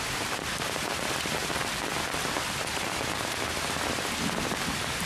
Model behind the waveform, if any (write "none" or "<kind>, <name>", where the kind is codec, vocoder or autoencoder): vocoder, BigVGAN v2